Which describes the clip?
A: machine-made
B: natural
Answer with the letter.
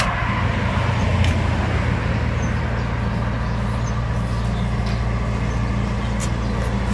B